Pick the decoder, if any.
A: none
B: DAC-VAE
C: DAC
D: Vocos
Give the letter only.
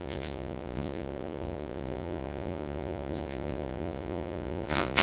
D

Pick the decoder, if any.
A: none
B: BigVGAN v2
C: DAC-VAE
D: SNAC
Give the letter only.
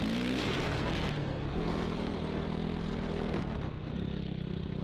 D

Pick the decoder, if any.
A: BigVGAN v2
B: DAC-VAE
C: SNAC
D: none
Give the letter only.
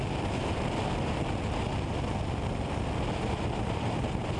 D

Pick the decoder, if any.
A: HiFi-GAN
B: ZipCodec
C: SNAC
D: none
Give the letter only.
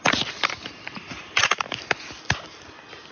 D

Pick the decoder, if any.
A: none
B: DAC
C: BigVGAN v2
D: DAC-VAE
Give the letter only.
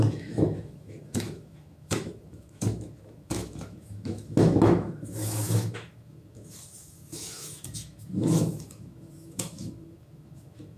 D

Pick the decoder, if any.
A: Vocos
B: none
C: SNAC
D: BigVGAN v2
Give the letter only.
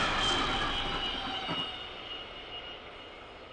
B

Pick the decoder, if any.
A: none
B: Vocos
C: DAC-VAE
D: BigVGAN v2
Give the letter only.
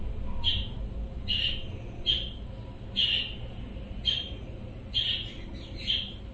A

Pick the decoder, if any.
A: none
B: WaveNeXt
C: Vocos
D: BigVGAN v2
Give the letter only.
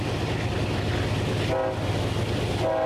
A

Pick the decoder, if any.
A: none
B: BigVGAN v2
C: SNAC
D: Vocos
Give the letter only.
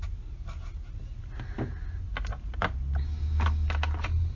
A